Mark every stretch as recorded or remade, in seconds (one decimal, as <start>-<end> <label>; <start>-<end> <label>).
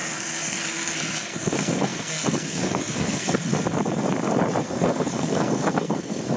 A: 0.0-3.5 remade; 3.5-4.6 recorded; 4.6-6.4 remade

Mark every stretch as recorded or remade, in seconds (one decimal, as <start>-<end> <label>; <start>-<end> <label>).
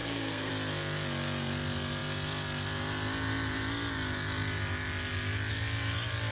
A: 0.0-0.5 remade; 0.5-6.3 recorded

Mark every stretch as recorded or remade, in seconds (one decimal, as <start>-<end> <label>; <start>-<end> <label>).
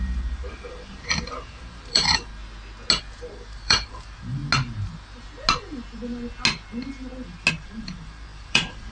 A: 0.0-2.4 remade; 2.4-3.0 recorded; 3.0-4.4 remade; 4.4-7.5 recorded; 7.5-8.9 remade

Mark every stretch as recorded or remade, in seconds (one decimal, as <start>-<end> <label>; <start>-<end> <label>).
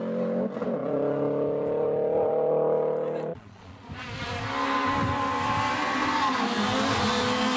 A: 0.0-3.3 recorded; 3.3-3.9 remade; 3.9-7.6 recorded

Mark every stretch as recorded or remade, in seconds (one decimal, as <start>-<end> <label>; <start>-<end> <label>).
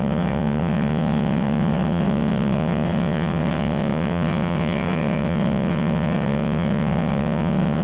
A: 0.0-7.8 remade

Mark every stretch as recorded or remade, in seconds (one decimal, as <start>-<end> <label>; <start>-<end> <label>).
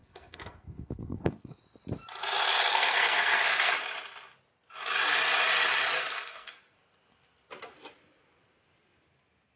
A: 0.0-1.6 remade; 1.6-2.7 recorded; 2.7-3.7 remade; 3.7-6.0 recorded; 6.0-6.8 remade; 6.8-9.6 recorded